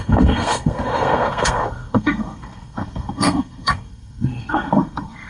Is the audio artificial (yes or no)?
yes